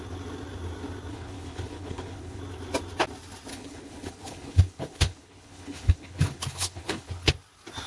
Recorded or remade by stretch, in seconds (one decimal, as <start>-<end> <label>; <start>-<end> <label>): 0.0-1.1 recorded; 1.1-2.4 remade; 2.4-3.5 recorded; 3.5-7.3 remade; 7.3-7.9 recorded